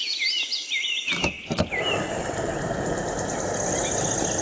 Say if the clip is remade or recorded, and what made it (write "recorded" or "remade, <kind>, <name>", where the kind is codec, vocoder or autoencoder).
recorded